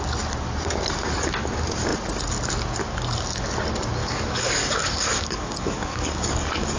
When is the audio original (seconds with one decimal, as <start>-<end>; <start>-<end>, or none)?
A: 0.0-4.0